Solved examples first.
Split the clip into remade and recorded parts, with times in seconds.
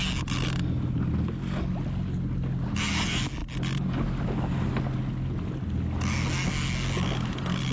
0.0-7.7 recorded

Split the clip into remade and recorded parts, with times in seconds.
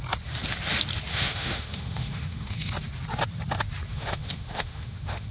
0.0-1.1 recorded; 1.1-2.7 remade; 2.7-3.9 recorded; 3.9-5.3 remade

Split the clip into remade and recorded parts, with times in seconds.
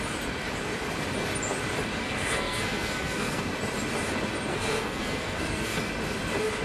0.0-2.0 recorded; 2.0-3.4 remade; 3.4-4.5 recorded; 4.5-5.9 remade; 5.9-6.6 recorded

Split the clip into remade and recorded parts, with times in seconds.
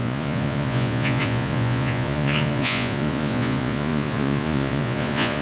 0.0-5.4 remade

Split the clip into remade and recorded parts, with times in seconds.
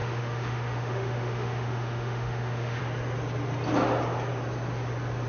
0.0-2.8 remade; 2.8-5.3 recorded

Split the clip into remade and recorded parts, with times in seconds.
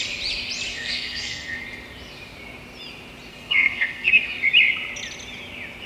0.0-0.7 recorded; 0.7-1.6 remade; 1.6-3.3 recorded; 3.3-4.4 remade; 4.4-5.9 recorded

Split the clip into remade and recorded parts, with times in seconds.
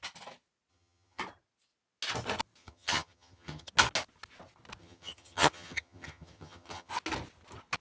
0.0-0.7 recorded; 0.7-1.2 remade; 1.2-2.6 recorded; 2.6-3.7 remade; 3.7-4.8 recorded; 4.8-6.9 remade; 6.9-7.8 recorded